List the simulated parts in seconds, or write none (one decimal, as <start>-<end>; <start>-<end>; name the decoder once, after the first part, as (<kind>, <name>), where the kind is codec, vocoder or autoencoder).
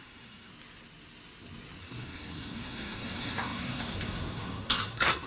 0.0-0.5 (codec, SNAC); 1.8-5.3